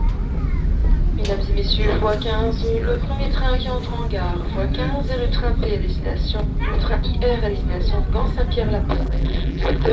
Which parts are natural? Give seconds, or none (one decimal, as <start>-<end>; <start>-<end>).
0.0-8.9